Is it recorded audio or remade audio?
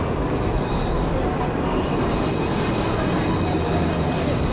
recorded